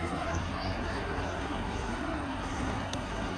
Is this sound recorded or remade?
remade